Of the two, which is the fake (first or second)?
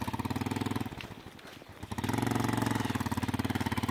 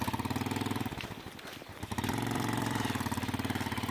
second